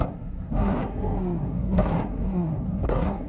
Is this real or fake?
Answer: fake